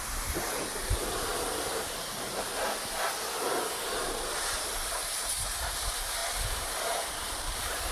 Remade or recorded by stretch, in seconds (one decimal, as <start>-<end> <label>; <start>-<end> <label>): 0.0-2.6 remade; 2.6-3.7 recorded; 3.7-6.2 remade; 6.2-7.0 recorded; 7.0-7.9 remade